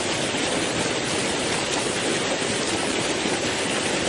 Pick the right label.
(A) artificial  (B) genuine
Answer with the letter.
B